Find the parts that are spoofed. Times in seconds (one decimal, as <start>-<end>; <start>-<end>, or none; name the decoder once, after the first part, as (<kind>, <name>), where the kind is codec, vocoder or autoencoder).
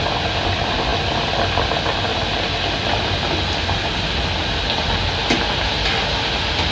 none